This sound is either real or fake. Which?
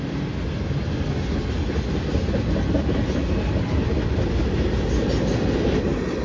real